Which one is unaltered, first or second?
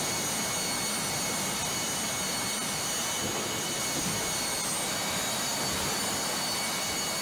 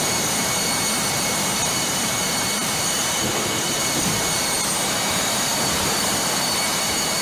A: first